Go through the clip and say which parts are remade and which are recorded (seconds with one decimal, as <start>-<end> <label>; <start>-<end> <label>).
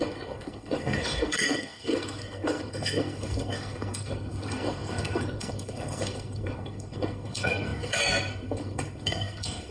0.0-9.7 remade